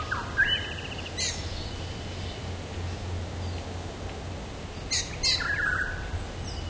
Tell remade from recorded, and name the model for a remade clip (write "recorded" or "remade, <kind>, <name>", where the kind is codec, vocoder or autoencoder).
recorded